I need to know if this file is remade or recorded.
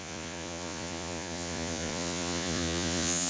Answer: remade